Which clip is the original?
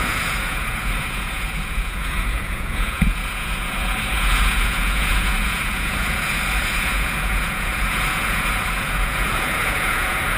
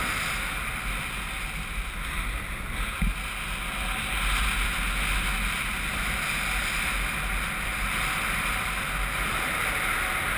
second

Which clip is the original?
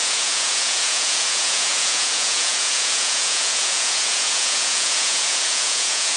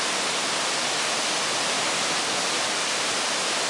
second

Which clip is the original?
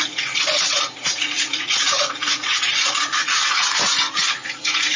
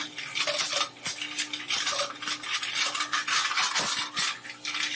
second